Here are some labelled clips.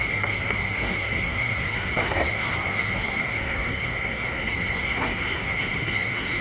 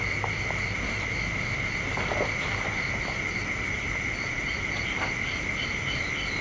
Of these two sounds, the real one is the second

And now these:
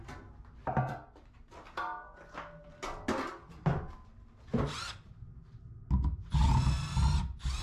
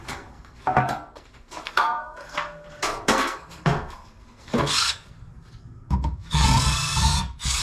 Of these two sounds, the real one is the first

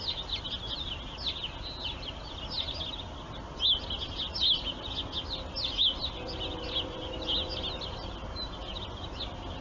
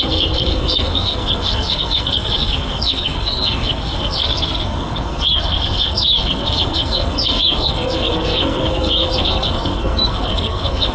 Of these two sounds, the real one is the first